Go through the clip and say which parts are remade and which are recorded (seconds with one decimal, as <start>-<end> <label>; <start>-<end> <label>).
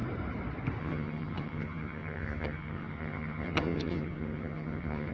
0.0-0.8 recorded; 0.8-5.1 remade